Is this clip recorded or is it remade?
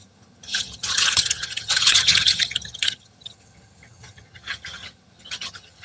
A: remade